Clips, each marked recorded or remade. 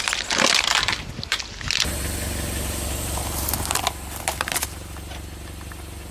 recorded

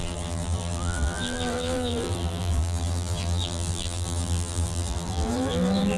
remade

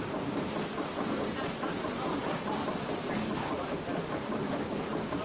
recorded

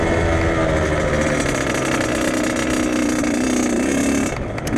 recorded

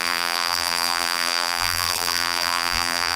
remade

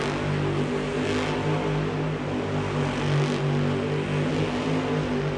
recorded